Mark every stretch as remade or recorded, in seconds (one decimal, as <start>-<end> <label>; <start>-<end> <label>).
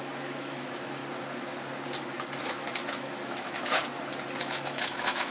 0.0-1.0 remade; 1.0-2.4 recorded; 2.4-3.8 remade; 3.8-4.4 recorded; 4.4-5.3 remade